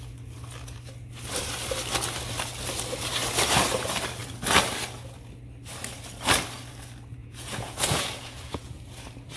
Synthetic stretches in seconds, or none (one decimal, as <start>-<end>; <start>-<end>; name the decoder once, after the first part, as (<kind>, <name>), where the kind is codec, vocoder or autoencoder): 7.2-8.8 (vocoder, Vocos)